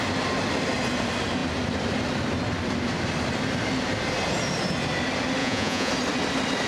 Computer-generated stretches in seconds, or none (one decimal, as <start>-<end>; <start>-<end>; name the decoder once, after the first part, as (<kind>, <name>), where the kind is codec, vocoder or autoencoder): 5.4-5.9 (vocoder, Vocos)